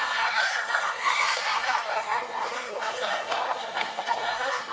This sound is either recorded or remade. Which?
remade